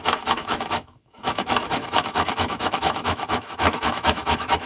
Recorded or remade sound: remade